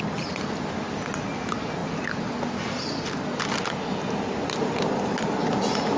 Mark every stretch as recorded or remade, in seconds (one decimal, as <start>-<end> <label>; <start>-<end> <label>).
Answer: 0.0-6.0 recorded